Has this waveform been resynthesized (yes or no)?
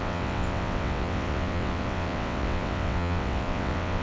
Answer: yes